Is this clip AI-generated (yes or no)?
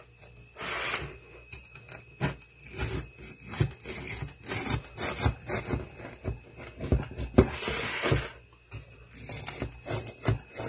no